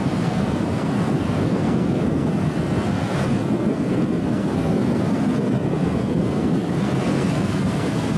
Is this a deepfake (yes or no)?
yes